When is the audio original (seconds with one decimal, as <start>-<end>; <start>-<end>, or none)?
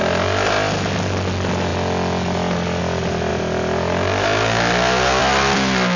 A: 0.0-6.0